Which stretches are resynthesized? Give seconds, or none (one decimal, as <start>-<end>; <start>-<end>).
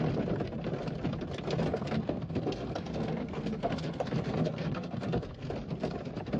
1.7-5.5